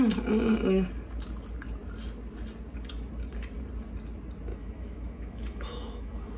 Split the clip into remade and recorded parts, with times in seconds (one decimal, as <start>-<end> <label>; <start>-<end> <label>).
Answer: 0.0-4.5 recorded; 4.5-6.4 remade